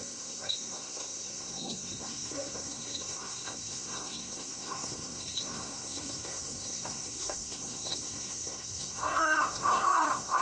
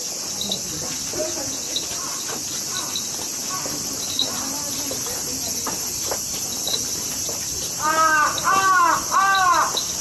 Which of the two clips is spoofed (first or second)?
first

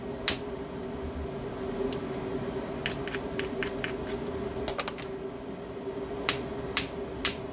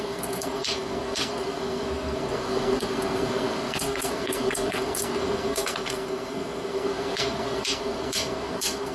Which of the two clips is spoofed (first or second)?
second